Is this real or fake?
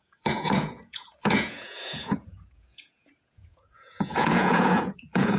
fake